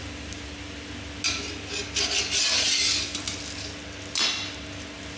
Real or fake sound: real